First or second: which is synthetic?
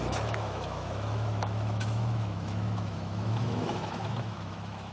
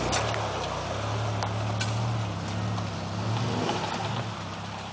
first